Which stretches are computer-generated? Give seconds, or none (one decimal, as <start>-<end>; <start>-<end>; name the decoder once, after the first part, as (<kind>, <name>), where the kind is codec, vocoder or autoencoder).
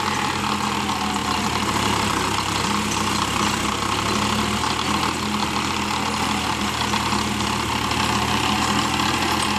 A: 1.2-3.6 (vocoder, BigVGAN v2); 5.4-6.8